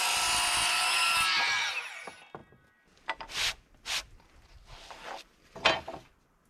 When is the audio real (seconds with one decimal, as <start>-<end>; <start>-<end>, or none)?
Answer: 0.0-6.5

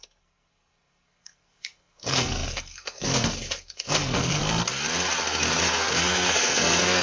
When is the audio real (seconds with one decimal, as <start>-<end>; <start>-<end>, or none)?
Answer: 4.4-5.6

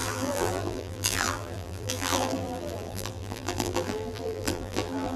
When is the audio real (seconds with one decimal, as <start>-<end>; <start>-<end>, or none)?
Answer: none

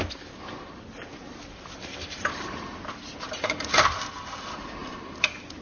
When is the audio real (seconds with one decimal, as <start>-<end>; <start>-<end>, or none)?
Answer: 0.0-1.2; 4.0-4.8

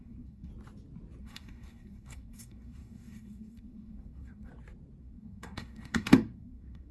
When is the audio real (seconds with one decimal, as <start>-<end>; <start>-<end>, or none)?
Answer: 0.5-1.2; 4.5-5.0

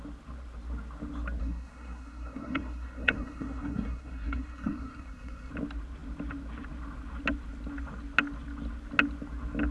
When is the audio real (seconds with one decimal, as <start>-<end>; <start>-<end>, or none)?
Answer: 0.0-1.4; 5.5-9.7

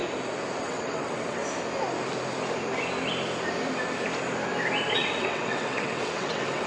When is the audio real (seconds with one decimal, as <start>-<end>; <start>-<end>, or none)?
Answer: 0.0-0.6; 1.4-4.9

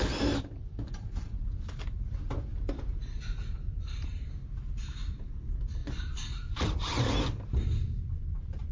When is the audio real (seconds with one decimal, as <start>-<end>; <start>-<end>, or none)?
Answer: 2.5-3.4; 4.4-5.0